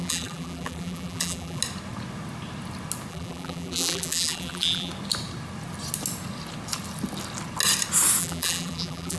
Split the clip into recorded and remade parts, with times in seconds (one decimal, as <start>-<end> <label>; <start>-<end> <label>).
0.0-1.6 remade; 1.6-3.1 recorded; 3.1-4.9 remade; 4.9-8.2 recorded; 8.2-9.2 remade